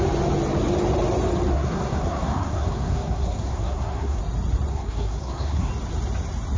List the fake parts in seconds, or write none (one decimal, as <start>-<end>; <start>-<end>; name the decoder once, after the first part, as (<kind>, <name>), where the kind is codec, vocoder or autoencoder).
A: 1.5-4.2 (codec, SNAC); 4.7-5.7